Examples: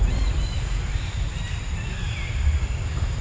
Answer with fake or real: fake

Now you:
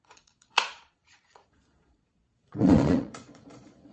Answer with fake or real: fake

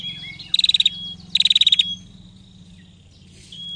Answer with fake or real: real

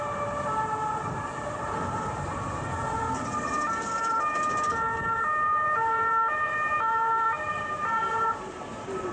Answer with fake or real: fake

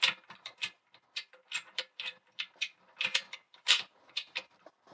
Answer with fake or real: fake